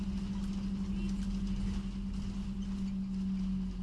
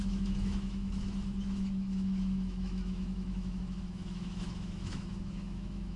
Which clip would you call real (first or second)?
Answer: first